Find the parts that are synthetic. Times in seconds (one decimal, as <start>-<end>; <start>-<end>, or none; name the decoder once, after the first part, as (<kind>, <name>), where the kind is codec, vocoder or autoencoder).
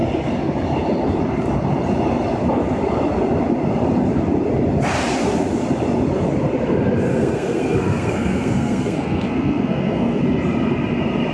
7.1-10.2 (codec, SNAC)